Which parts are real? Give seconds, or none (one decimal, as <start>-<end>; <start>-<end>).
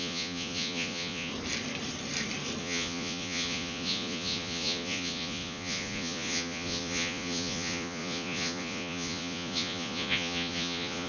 1.3-2.6